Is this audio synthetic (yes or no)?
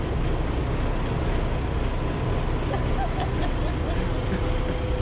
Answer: no